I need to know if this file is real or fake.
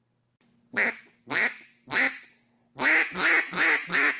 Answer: real